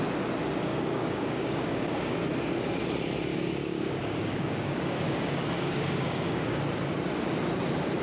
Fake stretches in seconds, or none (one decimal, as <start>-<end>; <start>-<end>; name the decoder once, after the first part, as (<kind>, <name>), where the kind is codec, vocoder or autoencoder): 0.7-2.2 (codec, DAC); 3.3-6.6